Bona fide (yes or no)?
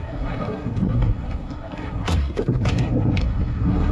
no